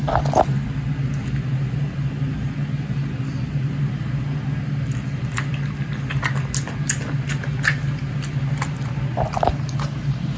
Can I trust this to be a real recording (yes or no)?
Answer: yes